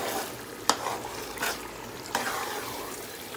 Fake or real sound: real